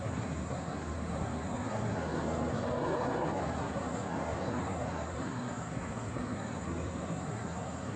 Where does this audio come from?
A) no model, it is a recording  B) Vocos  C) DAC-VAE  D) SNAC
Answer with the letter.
D